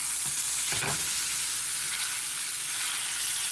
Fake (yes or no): no